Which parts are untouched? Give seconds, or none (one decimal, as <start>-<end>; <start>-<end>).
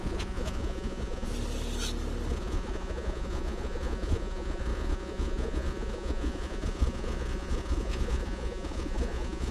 1.3-2.3